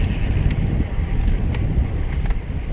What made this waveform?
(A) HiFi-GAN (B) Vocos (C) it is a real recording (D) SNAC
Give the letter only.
C